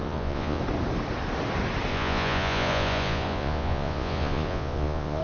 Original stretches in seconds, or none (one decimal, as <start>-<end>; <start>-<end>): 0.6-1.9